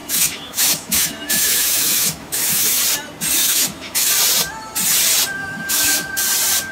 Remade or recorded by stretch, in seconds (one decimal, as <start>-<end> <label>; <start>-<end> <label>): 0.0-2.8 remade; 2.8-3.4 recorded; 3.4-4.1 remade; 4.1-5.4 recorded; 5.4-6.1 remade; 6.1-6.7 recorded

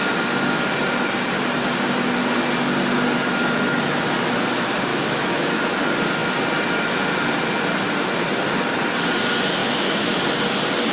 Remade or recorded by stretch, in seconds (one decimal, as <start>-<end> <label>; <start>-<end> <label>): 0.0-4.9 recorded; 4.9-5.8 remade; 5.8-9.6 recorded; 9.6-10.2 remade; 10.2-10.9 recorded

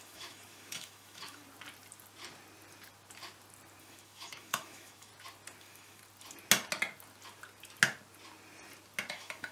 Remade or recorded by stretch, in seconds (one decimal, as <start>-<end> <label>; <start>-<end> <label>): 0.0-1.4 remade; 1.4-3.8 recorded; 3.8-5.1 remade; 5.1-5.6 recorded; 5.6-6.0 remade; 6.0-9.1 recorded; 9.1-9.5 remade

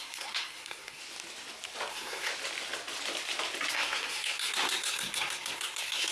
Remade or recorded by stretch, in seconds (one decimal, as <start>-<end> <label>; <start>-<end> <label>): 0.0-1.0 remade; 1.0-1.9 recorded; 1.9-2.3 remade; 2.3-3.7 recorded; 3.7-6.1 remade

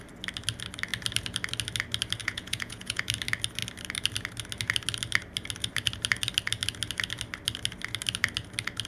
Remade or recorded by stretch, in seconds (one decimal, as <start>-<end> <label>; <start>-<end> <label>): 0.0-2.2 recorded; 2.2-3.0 remade; 3.0-8.9 recorded

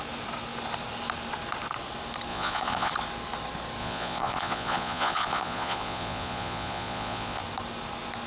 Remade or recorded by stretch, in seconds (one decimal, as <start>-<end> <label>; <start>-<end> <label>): 0.0-2.3 recorded; 2.3-2.9 remade; 2.9-3.8 recorded; 3.8-7.4 remade; 7.4-8.3 recorded

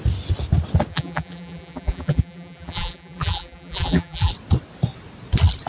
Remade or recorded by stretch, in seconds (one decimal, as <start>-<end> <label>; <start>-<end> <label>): 0.0-0.9 recorded; 0.9-4.3 remade; 4.3-5.7 recorded